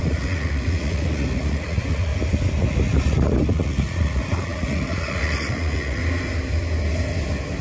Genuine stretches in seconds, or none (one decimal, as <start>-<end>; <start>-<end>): 2.1-2.6; 6.0-7.6